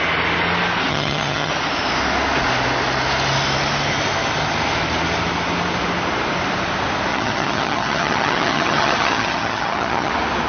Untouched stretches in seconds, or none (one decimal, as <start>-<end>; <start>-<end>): 0.0-0.9; 1.5-7.1; 10.1-10.5